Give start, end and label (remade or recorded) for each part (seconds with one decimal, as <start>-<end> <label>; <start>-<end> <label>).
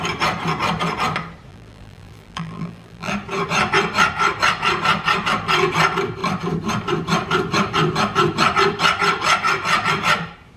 0.0-1.5 recorded; 1.5-3.1 remade; 3.1-10.6 recorded